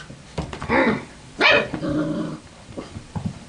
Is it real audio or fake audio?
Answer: fake